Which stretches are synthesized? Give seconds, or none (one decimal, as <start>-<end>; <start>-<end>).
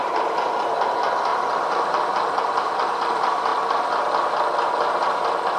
0.0-3.5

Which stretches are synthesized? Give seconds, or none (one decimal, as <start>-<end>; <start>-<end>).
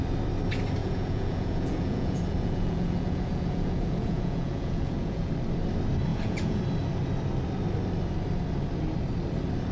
0.8-5.3; 6.1-6.6